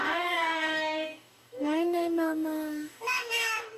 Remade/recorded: remade